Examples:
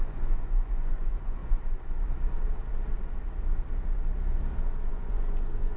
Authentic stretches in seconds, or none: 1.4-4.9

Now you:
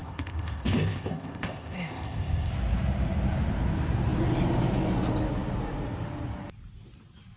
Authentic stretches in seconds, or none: 2.5-7.4

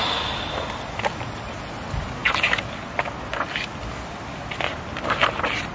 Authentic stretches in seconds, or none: 0.0-2.2; 3.0-5.7

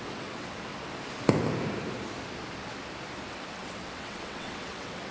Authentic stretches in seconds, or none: 0.7-3.3

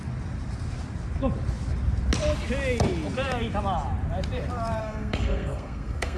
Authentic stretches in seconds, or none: 0.0-4.8